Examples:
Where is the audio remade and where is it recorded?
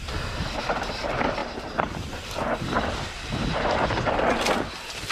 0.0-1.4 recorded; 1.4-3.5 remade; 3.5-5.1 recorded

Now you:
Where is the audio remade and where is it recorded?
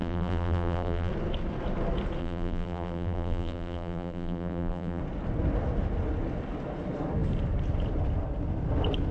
0.0-1.1 remade; 1.1-2.2 recorded; 2.2-5.0 remade; 5.0-9.1 recorded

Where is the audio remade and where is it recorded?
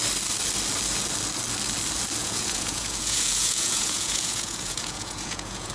0.0-2.2 recorded; 2.2-5.7 remade